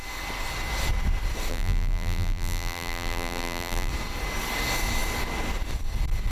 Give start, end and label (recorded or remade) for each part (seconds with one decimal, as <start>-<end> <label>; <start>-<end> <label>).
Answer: 0.0-1.5 recorded; 1.5-3.9 remade; 3.9-6.3 recorded